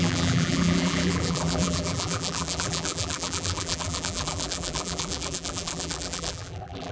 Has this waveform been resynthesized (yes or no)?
yes